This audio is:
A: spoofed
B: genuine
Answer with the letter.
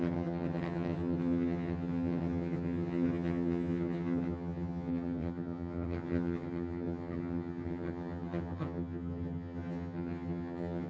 A